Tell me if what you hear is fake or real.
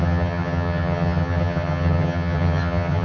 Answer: fake